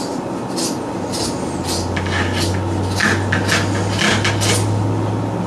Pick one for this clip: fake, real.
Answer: real